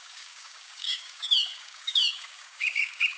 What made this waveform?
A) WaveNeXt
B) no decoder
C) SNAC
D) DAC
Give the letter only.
D